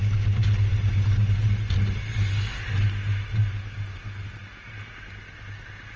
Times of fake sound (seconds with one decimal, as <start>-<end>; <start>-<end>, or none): none